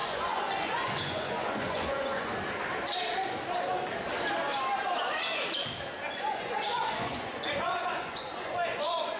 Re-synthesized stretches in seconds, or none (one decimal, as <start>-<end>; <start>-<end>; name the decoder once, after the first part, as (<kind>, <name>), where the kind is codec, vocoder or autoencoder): 0.0-2.3 (vocoder, Vocos); 6.1-9.2